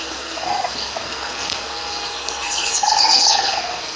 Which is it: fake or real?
fake